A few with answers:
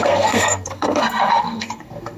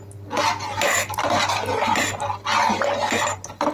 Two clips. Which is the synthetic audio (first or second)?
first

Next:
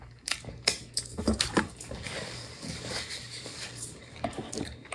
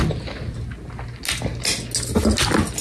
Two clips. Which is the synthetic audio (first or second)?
first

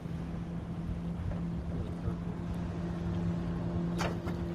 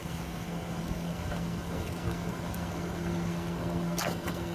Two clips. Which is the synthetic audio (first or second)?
second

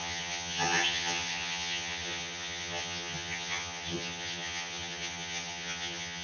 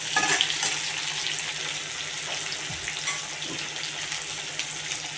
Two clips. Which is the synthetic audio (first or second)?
first